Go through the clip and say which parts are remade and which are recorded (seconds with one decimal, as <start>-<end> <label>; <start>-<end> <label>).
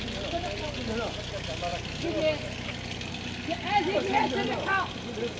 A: 0.0-5.4 recorded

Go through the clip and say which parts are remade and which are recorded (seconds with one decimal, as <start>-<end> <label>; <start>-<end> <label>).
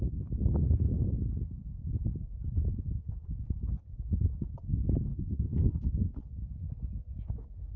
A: 0.0-5.1 recorded; 5.1-6.2 remade; 6.2-7.8 recorded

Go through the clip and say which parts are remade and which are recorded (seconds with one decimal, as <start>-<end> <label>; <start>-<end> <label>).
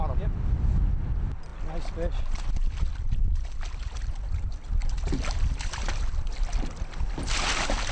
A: 0.0-1.5 recorded; 1.5-2.9 remade; 2.9-4.8 recorded; 4.8-5.9 remade; 5.9-7.9 recorded